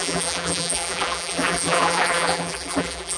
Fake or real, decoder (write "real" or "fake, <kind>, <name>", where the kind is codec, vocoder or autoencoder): fake, vocoder, BigVGAN v2